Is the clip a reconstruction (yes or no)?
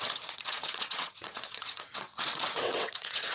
yes